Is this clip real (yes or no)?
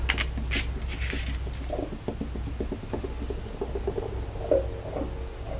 yes